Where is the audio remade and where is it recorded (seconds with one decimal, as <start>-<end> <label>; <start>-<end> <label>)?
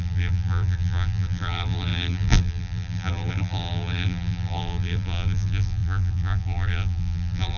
0.0-7.6 remade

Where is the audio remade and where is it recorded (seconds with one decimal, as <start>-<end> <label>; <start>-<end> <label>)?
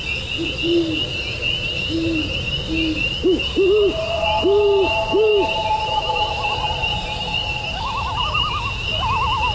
0.0-1.8 recorded; 1.8-2.5 remade; 2.5-5.3 recorded; 5.3-8.7 remade; 8.7-9.5 recorded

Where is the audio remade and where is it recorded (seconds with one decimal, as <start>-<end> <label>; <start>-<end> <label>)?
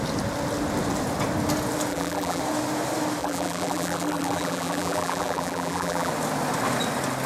0.0-1.9 recorded; 1.9-2.4 remade; 2.4-3.2 recorded; 3.2-6.1 remade; 6.1-7.3 recorded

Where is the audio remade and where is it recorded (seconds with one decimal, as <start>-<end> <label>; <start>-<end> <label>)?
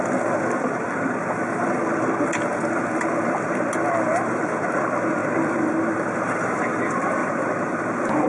0.0-7.2 recorded; 7.2-7.7 remade; 7.7-8.3 recorded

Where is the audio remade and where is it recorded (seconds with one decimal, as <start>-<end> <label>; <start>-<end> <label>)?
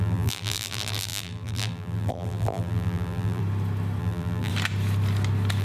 0.0-3.4 remade; 3.4-4.0 recorded; 4.0-4.5 remade; 4.5-5.6 recorded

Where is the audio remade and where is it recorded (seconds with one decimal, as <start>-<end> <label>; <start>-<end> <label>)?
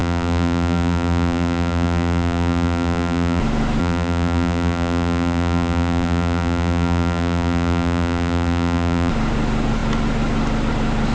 0.0-3.4 remade; 3.4-3.8 recorded; 3.8-9.1 remade; 9.1-11.1 recorded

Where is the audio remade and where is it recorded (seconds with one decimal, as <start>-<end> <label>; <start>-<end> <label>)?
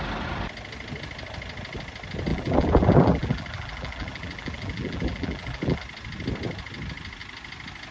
0.0-2.3 recorded; 2.3-5.8 remade; 5.8-7.9 recorded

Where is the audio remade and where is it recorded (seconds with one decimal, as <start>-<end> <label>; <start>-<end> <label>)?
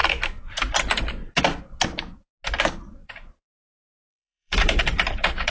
0.0-3.0 recorded; 3.0-4.8 remade; 4.8-5.5 recorded